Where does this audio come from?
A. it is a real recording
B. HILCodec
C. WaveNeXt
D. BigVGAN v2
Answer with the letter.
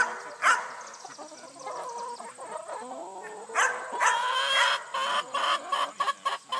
A